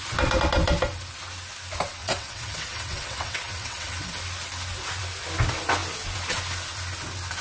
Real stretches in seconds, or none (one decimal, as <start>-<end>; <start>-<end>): 0.0-2.0; 4.1-7.4